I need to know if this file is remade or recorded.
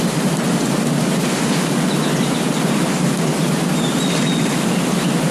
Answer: recorded